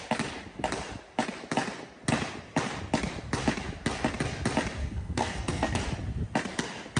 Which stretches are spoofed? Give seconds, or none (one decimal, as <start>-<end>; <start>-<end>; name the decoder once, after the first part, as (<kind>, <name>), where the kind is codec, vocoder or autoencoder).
4.8-5.8 (codec, SNAC)

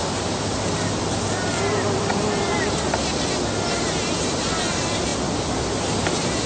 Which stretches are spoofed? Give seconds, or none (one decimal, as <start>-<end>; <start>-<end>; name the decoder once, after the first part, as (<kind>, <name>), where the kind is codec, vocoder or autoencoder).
none

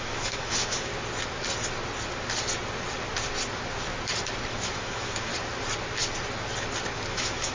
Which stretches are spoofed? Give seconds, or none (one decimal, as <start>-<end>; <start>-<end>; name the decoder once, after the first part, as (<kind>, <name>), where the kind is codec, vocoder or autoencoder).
0.0-0.9 (autoencoder, DAC-VAE); 4.5-5.3; 7.1-7.5

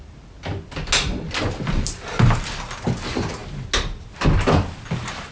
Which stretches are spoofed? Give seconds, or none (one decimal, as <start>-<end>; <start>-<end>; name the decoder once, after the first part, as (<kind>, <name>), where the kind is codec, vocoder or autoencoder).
none

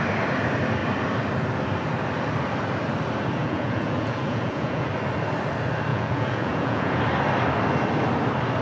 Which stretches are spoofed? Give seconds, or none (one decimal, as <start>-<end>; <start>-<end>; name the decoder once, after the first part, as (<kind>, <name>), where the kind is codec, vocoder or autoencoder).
3.4-4.9 (vocoder, Vocos); 5.9-7.0

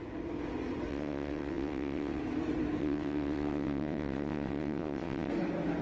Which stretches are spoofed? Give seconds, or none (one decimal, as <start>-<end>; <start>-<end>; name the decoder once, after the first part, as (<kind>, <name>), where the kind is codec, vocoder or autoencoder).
0.9-2.2 (vocoder, WaveNeXt); 2.8-5.3

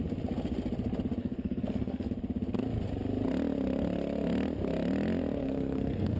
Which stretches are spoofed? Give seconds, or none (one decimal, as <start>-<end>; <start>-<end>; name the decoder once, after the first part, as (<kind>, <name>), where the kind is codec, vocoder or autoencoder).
1.2-2.1 (codec, SNAC); 5.4-6.2